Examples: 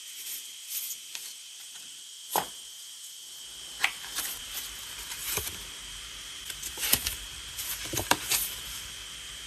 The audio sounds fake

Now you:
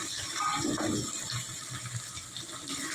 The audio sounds real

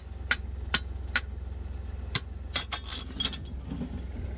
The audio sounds real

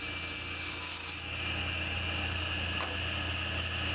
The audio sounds real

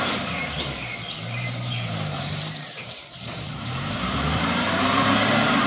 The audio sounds fake